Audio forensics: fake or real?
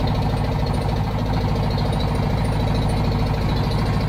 real